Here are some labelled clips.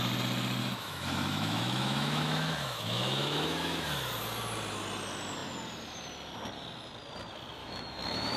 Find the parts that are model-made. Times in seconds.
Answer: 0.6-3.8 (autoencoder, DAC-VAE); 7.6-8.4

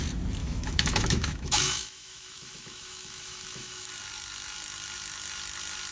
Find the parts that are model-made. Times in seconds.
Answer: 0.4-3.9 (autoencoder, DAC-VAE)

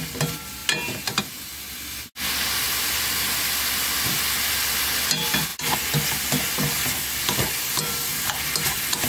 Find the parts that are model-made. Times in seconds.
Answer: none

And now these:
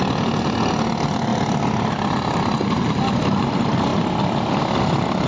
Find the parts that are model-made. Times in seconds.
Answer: none

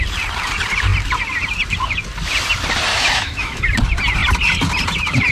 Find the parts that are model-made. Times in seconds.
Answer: 2.9-3.6 (autoencoder, DAC-VAE)

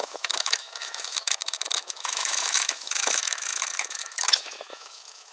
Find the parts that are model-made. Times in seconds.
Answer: 0.0-5.3 (autoencoder, DAC-VAE)

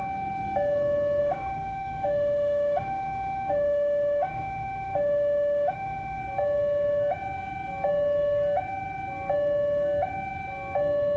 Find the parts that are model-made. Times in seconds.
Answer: 1.2-6.2 (autoencoder, DAC-VAE)

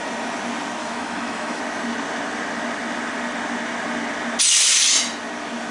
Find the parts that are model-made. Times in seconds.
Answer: 0.8-1.6 (autoencoder, DAC-VAE)